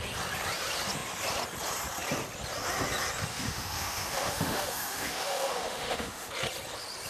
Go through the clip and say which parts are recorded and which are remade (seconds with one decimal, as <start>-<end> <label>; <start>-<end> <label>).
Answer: 0.0-3.3 recorded; 3.3-6.3 remade; 6.3-7.1 recorded